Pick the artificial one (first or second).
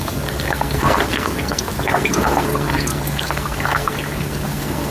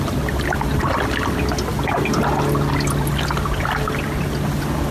first